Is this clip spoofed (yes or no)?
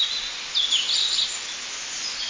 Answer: no